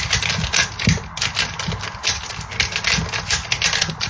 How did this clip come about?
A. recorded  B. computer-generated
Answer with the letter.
A